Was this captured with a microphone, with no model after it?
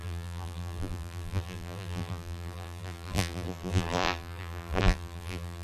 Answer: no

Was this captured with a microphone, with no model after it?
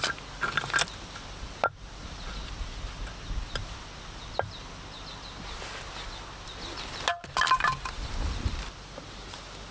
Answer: yes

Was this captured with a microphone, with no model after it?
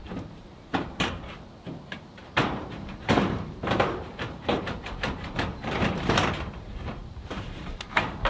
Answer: no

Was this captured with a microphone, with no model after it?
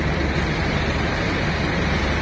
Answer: yes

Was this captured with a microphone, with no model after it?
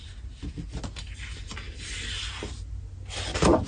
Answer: yes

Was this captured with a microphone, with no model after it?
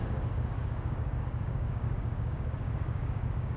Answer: no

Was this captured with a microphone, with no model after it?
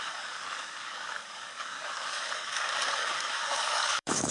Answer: no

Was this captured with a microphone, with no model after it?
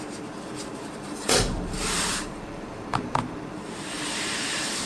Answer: no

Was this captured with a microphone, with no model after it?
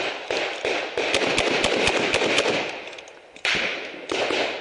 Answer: yes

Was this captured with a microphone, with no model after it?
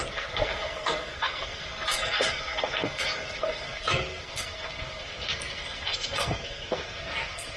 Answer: no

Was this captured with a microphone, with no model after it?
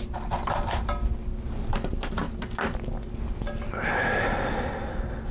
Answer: yes